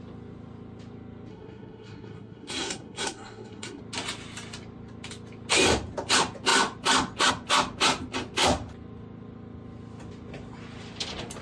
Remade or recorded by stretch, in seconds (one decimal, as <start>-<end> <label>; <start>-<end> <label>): 0.0-1.3 recorded; 1.3-3.8 remade; 3.8-11.4 recorded